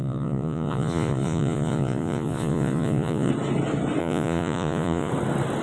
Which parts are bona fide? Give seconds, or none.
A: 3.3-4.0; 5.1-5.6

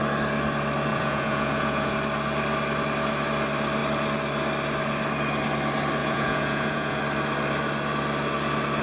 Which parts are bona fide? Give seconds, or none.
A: 0.0-0.9; 1.9-6.0; 7.0-8.8

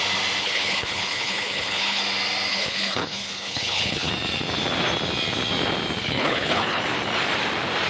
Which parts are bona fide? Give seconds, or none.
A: 0.0-0.4; 2.0-2.5; 4.1-6.0; 6.8-7.9

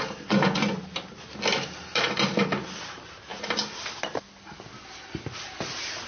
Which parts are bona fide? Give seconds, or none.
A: 0.0-3.3; 5.6-6.1

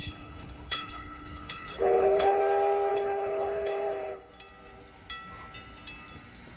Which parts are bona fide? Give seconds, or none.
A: 2.4-2.9; 4.3-6.6

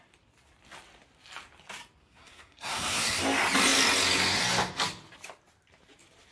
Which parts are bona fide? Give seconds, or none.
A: 0.0-2.0; 3.2-6.3

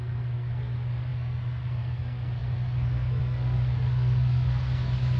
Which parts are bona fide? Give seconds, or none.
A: none